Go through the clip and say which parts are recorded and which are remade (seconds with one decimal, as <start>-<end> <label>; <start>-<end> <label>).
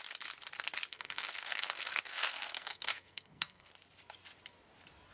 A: 0.0-0.9 recorded; 0.9-3.7 remade; 3.7-5.1 recorded